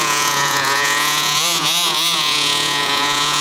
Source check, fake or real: fake